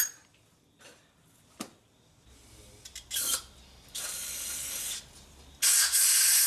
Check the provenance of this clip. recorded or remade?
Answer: recorded